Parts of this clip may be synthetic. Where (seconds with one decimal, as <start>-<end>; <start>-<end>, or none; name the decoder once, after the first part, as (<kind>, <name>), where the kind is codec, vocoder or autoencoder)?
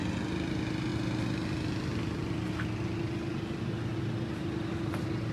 none